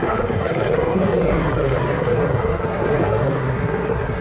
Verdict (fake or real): fake